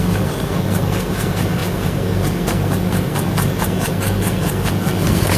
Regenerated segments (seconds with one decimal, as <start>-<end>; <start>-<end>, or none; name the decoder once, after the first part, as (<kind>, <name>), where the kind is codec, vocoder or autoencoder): 0.0-5.4 (codec, SNAC)